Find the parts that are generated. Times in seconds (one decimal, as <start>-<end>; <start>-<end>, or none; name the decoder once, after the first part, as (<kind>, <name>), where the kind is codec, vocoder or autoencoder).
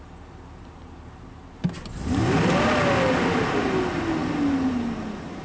none